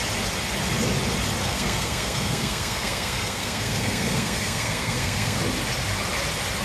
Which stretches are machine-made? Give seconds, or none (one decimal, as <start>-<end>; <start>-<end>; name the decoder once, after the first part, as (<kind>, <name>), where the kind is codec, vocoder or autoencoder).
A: 1.4-5.4 (codec, SNAC)